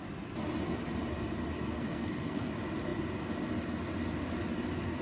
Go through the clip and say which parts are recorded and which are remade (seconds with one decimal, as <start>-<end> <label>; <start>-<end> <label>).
0.0-1.8 recorded; 1.8-2.5 remade; 2.5-5.0 recorded